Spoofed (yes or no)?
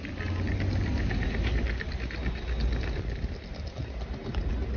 no